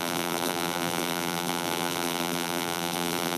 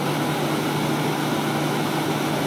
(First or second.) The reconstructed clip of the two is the first